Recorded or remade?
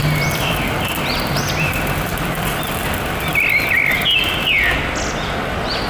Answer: recorded